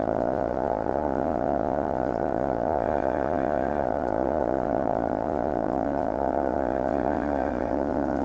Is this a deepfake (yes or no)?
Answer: yes